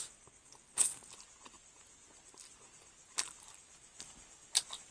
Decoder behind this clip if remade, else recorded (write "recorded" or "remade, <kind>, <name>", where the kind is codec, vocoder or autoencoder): recorded